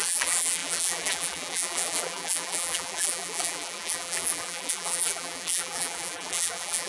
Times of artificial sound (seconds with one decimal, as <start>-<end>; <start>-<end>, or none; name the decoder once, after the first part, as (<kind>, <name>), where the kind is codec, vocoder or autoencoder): 0.0-6.9 (vocoder, BigVGAN v2)